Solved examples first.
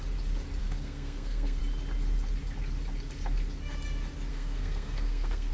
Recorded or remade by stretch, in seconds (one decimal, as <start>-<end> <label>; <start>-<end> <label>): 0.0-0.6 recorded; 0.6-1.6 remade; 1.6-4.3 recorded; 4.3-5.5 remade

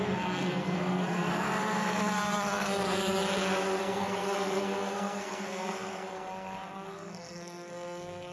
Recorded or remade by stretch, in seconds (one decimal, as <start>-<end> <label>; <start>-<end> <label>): 0.0-3.2 remade; 3.2-3.8 recorded; 3.8-8.3 remade

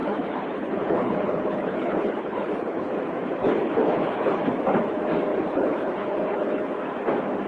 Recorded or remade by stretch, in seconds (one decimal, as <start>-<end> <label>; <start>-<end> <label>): 0.0-2.9 remade; 2.9-3.4 recorded; 3.4-4.4 remade; 4.4-5.3 recorded; 5.3-6.7 remade; 6.7-7.5 recorded